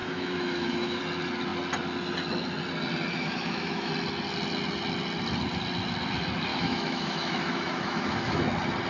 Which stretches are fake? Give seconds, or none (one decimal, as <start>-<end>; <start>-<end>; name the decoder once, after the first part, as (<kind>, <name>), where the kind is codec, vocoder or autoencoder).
0.0-1.0 (autoencoder, DAC-VAE); 3.1-3.9; 6.5-8.4